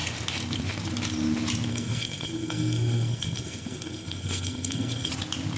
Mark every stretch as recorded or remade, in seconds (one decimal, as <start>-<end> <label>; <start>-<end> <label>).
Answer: 0.0-1.7 recorded; 1.7-5.1 remade; 5.1-5.6 recorded